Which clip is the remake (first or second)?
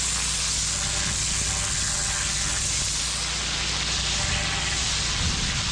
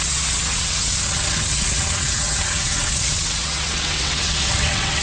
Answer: second